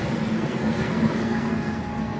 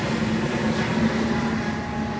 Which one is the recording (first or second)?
second